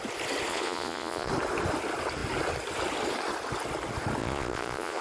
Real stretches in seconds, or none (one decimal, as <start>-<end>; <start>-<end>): 0.0-0.5; 1.3-4.2